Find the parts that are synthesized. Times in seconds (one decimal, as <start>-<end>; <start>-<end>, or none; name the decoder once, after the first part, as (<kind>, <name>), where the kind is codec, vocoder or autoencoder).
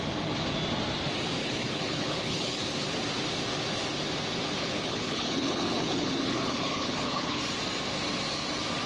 1.4-2.6 (codec, HILCodec); 4.6-7.4